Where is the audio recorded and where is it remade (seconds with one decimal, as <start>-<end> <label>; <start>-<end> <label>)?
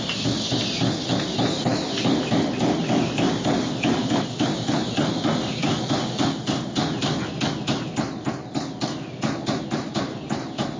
0.0-10.8 recorded